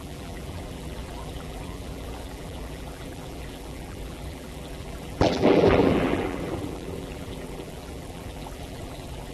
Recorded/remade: remade